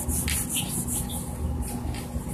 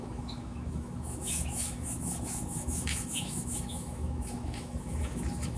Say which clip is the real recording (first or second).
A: first